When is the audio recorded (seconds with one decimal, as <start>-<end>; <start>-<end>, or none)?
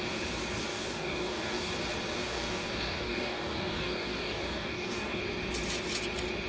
0.0-0.7; 1.7-2.2; 5.2-6.5